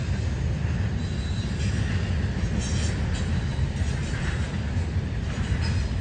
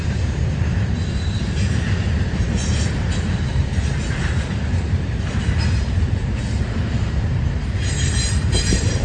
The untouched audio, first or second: first